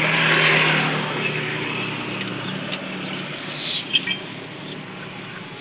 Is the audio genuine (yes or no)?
yes